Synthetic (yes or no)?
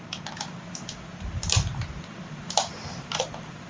yes